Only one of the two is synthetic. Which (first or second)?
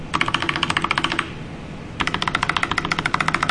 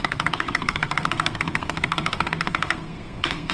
second